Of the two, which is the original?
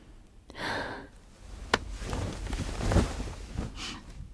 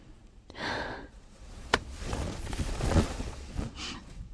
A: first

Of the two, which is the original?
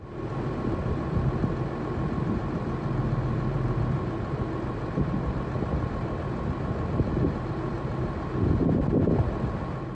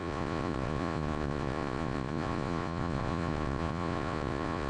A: first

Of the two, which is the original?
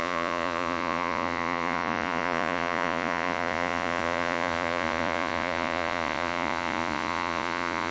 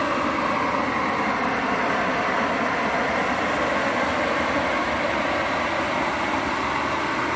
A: second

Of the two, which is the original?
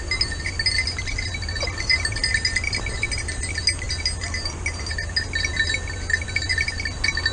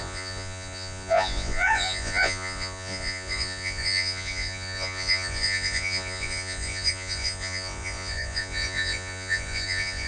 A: first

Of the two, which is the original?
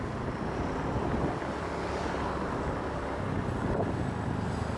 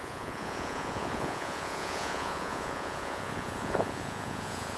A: first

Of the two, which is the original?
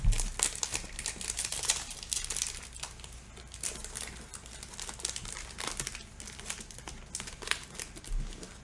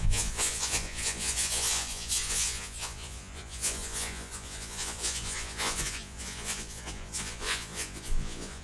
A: first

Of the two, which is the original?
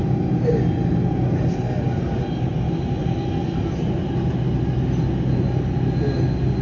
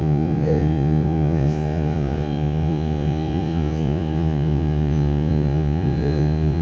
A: first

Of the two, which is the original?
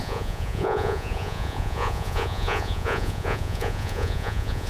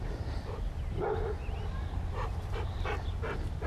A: second